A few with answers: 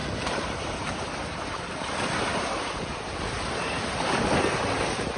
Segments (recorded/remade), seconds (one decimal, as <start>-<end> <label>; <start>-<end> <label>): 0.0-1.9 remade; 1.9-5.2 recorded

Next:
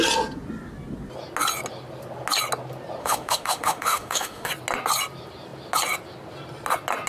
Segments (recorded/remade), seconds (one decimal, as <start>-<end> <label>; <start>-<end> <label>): 0.0-3.0 recorded; 3.0-4.5 remade; 4.5-7.1 recorded

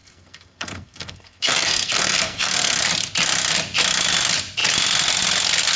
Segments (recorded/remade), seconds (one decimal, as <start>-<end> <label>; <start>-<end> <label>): 0.0-2.8 remade; 2.8-5.8 recorded